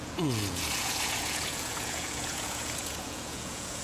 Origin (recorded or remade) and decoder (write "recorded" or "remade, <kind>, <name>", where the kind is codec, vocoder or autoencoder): remade, vocoder, Vocos